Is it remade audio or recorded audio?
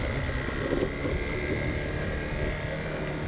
recorded